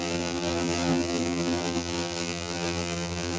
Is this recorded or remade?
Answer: remade